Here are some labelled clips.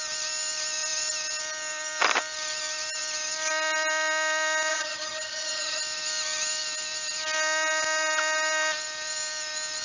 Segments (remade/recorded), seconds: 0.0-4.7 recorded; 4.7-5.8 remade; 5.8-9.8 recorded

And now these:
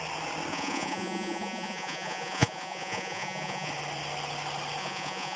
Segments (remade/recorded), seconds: 0.0-0.5 recorded; 0.5-3.7 remade; 3.7-4.8 recorded; 4.8-5.4 remade

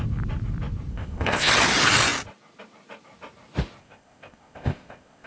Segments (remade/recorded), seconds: 0.0-0.9 recorded; 0.9-1.5 remade; 1.5-3.8 recorded; 3.8-5.3 remade

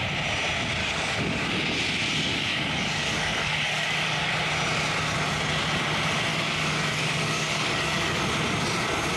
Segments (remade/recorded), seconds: 0.0-0.8 recorded; 0.8-1.5 remade; 1.5-2.3 recorded; 2.3-4.3 remade; 4.3-6.3 recorded; 6.3-8.2 remade; 8.2-9.2 recorded

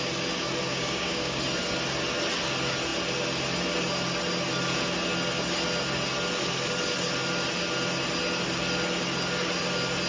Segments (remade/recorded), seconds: 0.0-0.7 recorded; 0.7-1.4 remade; 1.4-10.1 recorded

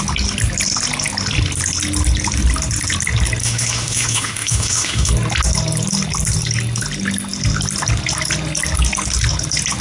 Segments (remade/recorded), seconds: 0.0-3.4 recorded; 3.4-5.1 remade; 5.1-9.8 recorded

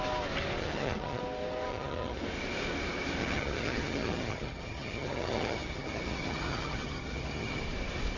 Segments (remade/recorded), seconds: 0.0-0.6 recorded; 0.6-1.2 remade; 1.2-1.7 recorded; 1.7-2.2 remade; 2.2-3.2 recorded; 3.2-7.6 remade; 7.6-8.2 recorded

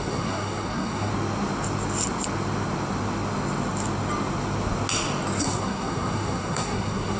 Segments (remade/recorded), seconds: 0.0-1.1 remade; 1.1-5.4 recorded; 5.4-7.2 remade